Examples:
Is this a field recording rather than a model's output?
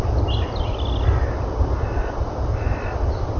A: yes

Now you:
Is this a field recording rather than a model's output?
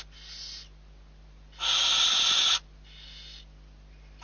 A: yes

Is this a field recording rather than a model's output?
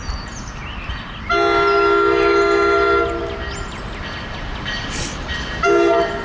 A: yes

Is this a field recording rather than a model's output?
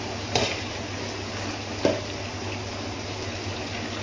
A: yes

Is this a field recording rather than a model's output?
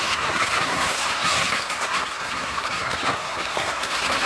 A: no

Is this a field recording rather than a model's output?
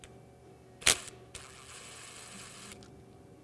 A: yes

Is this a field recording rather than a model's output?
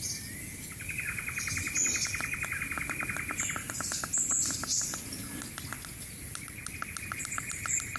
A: yes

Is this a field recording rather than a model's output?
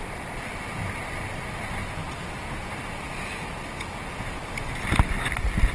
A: yes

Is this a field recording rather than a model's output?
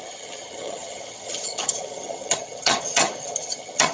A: no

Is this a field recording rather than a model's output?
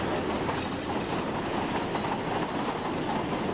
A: yes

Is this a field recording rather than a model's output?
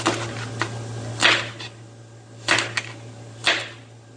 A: yes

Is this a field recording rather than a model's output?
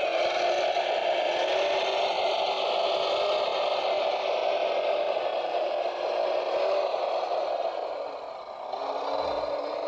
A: yes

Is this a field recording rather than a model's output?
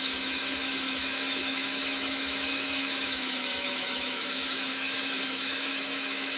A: no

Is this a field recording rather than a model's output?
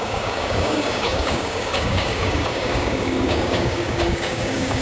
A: no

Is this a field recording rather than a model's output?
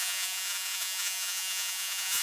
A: no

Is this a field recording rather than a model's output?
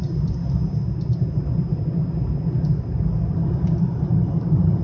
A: yes